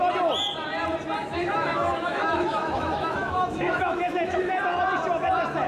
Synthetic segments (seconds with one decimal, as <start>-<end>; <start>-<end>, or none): 1.2-4.6